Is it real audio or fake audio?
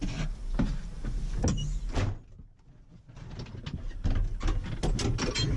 real